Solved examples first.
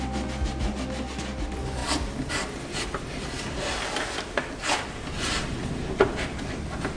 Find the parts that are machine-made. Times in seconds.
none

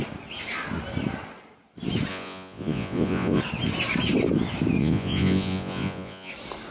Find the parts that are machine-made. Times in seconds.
2.1-3.4 (vocoder, Vocos); 4.8-6.3

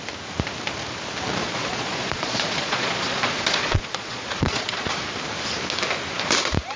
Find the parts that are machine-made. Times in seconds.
1.4-4.9 (vocoder, Vocos)

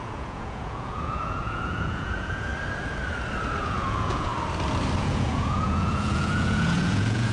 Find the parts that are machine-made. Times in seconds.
0.0-2.5 (vocoder, Vocos); 3.6-4.3; 5.0-7.3

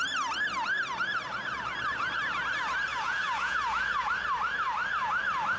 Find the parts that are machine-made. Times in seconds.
2.9-4.1 (vocoder, Vocos)

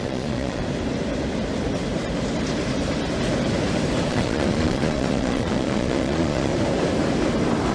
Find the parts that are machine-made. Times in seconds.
0.0-0.6 (vocoder, Vocos); 4.1-6.5

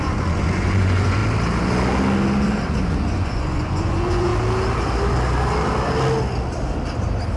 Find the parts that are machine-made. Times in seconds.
0.0-1.2 (vocoder, Vocos); 2.7-4.3

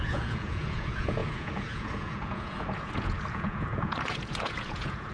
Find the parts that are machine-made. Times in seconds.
0.0-5.1 (vocoder, Vocos)